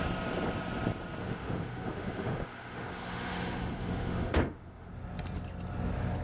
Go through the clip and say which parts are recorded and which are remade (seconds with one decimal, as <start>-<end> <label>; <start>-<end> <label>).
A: 0.0-1.2 recorded; 1.2-4.9 remade; 4.9-6.2 recorded